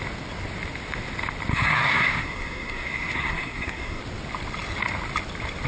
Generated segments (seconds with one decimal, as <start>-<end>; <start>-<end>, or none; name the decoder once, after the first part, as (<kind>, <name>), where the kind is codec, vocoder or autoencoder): 1.5-4.0 (codec, SNAC)